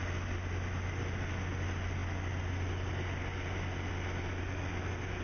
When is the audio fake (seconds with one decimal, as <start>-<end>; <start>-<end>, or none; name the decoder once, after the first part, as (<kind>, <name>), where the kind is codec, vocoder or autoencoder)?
none